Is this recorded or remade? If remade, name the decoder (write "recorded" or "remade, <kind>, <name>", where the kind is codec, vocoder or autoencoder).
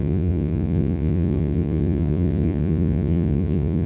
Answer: remade, vocoder, Vocos